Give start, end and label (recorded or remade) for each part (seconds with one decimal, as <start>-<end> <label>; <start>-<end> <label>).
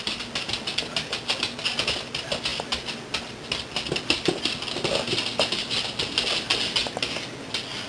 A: 0.0-7.9 recorded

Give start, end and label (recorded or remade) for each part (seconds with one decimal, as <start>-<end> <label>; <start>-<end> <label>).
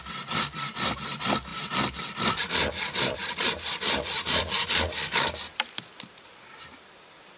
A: 0.0-1.5 recorded; 1.5-5.9 remade; 5.9-7.4 recorded